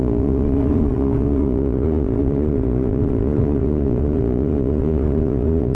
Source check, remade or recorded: remade